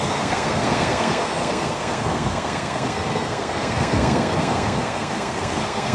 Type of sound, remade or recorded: remade